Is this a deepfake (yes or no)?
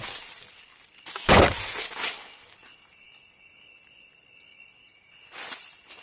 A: no